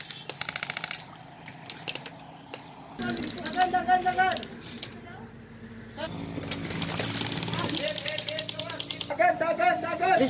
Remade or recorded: recorded